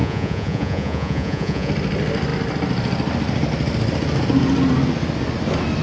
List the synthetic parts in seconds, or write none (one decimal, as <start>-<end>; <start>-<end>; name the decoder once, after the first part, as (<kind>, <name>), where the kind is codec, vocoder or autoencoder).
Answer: 0.0-1.7 (vocoder, Vocos)